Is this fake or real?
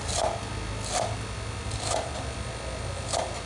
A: real